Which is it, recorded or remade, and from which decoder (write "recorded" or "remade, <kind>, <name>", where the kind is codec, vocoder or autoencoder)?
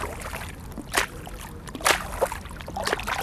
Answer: recorded